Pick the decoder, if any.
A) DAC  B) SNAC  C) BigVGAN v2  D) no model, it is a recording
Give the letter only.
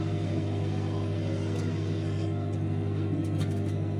B